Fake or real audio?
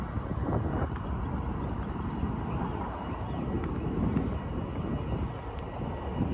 real